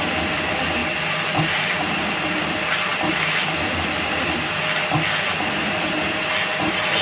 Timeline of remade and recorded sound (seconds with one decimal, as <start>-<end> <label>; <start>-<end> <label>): 0.0-7.0 recorded